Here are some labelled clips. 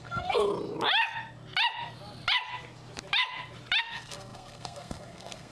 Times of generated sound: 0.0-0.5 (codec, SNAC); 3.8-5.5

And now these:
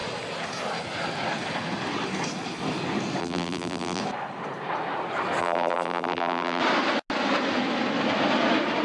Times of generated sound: 3.2-4.0 (vocoder, BigVGAN v2); 5.4-6.6

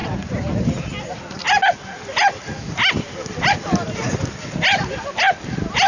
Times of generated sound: none

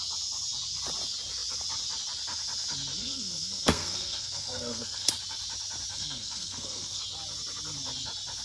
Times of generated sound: 3.0-5.1 (codec, SNAC); 5.9-7.0

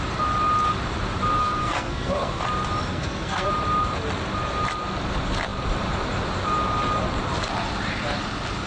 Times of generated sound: 1.4-2.4 (codec, SNAC); 2.9-3.5